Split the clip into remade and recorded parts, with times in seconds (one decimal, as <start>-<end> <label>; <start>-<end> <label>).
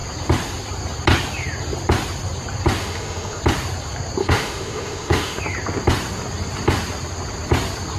0.0-2.8 recorded; 2.8-3.4 remade; 3.4-4.2 recorded; 4.2-5.4 remade; 5.4-8.0 recorded